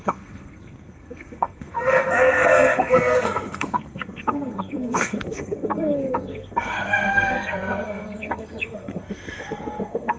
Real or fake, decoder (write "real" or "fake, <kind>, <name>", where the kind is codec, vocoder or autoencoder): fake, codec, SNAC